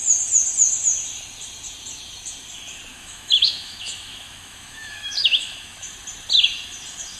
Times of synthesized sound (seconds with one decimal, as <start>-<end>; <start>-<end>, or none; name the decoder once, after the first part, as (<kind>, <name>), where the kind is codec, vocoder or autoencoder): 2.9-5.9 (autoencoder, DAC-VAE)